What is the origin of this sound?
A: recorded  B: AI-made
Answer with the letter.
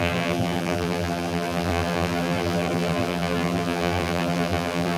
B